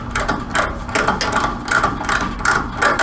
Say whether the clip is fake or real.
real